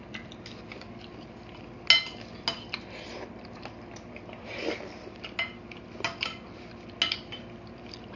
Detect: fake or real real